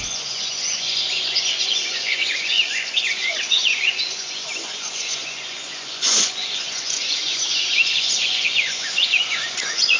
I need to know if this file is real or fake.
fake